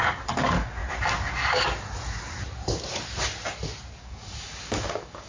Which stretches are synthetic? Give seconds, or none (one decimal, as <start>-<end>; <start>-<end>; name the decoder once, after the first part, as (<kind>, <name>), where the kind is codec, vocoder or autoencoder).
0.0-0.8 (codec, DAC); 4.0-5.3